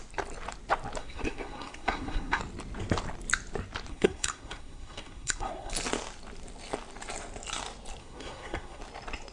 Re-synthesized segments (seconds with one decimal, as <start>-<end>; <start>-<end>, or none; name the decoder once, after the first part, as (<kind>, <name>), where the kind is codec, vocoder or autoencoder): 1.0-2.4 (codec, SNAC); 3.9-5.7; 8.0-8.8